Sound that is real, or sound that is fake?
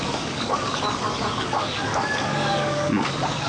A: fake